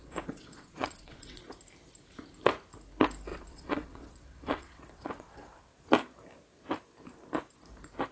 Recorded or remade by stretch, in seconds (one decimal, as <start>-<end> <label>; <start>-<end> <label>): 0.0-1.4 remade; 1.4-3.3 recorded; 3.3-5.6 remade; 5.6-8.1 recorded